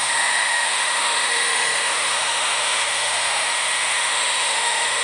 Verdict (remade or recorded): remade